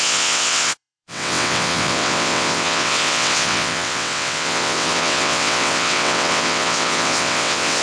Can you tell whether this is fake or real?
fake